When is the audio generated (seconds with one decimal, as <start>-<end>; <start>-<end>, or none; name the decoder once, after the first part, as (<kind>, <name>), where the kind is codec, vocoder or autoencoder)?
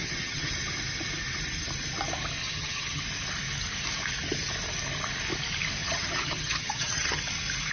0.0-0.5 (vocoder, HiFi-GAN); 2.4-3.0; 5.8-7.2